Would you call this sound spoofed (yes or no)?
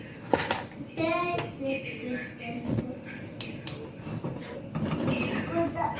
no